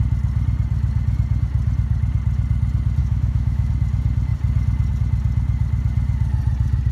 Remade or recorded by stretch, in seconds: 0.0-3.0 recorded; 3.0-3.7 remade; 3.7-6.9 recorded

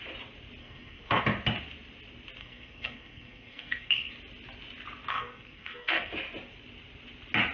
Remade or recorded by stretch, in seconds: 0.0-0.6 recorded; 0.6-1.2 remade; 1.2-2.4 recorded; 2.4-4.1 remade; 4.1-5.1 recorded; 5.1-6.1 remade; 6.1-7.5 recorded

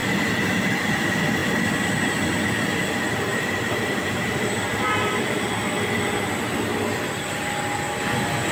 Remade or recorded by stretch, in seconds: 0.0-0.9 remade; 0.9-3.3 recorded; 3.3-4.5 remade; 4.5-8.5 recorded

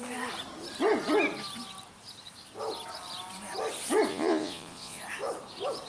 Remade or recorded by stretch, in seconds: 0.0-4.1 recorded; 4.1-5.0 remade; 5.0-5.9 recorded

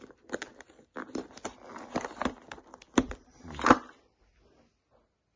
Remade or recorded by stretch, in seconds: 0.0-5.4 recorded

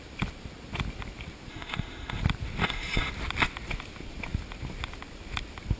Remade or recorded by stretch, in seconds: 0.0-1.5 recorded; 1.5-2.2 remade; 2.2-2.6 recorded; 2.6-3.1 remade; 3.1-5.8 recorded

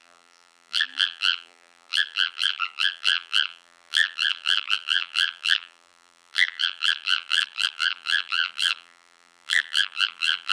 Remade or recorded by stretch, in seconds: 0.0-10.5 remade

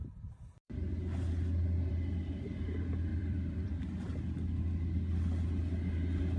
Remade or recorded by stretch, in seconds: 0.0-3.1 recorded; 3.1-3.8 remade; 3.8-6.4 recorded